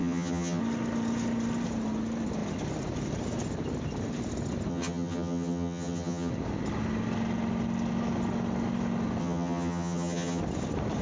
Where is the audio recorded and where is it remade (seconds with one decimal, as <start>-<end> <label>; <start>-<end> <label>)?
0.0-0.6 remade; 0.6-4.7 recorded; 4.7-6.3 remade; 6.3-9.2 recorded; 9.2-10.4 remade; 10.4-11.0 recorded